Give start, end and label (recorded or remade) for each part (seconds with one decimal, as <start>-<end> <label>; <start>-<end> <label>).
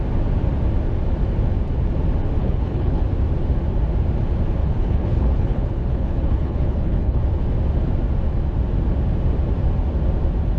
0.0-2.4 recorded; 2.4-3.0 remade; 3.0-4.6 recorded; 4.6-7.2 remade; 7.2-10.6 recorded